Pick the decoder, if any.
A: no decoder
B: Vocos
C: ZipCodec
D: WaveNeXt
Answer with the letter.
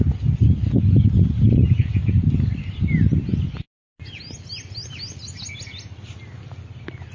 A